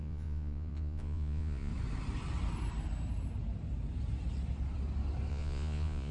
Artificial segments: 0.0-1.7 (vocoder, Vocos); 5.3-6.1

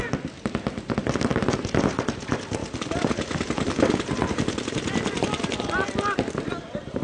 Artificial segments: none

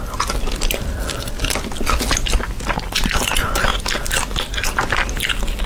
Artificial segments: none

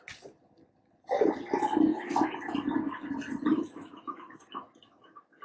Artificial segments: 1.9-2.5 (autoencoder, DAC-VAE); 3.5-5.4

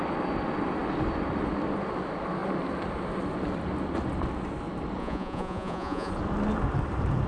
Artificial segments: 5.0-6.1 (vocoder, Vocos)

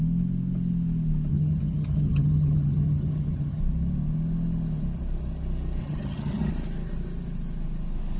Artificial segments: 1.3-3.6 (vocoder, HiFi-GAN); 5.8-6.5